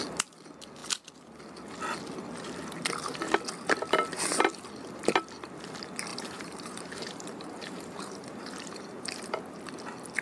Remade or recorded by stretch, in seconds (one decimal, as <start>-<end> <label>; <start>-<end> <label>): 0.0-6.1 recorded; 6.1-9.4 remade; 9.4-10.2 recorded